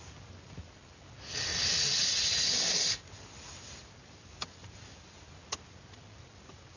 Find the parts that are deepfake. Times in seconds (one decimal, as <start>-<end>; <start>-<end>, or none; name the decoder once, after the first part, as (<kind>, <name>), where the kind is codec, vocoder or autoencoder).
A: none